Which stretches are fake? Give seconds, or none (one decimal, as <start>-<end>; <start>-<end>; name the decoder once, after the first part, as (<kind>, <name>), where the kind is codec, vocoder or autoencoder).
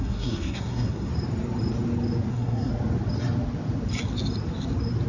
0.0-1.1 (codec, SNAC); 2.3-2.7